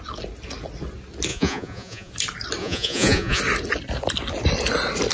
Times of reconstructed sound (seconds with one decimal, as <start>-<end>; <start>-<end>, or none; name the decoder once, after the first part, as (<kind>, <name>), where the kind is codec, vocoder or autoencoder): 1.3-2.1 (vocoder, Vocos); 2.6-3.4